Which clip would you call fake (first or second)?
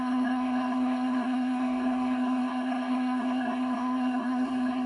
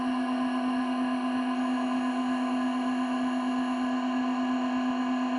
first